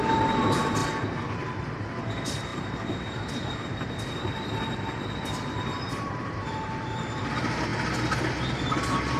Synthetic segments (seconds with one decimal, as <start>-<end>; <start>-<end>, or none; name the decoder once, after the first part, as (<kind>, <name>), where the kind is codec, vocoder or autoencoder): 0.0-0.8 (vocoder, BigVGAN v2); 1.6-7.7; 8.6-9.2